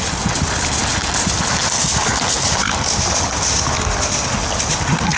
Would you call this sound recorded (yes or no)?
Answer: yes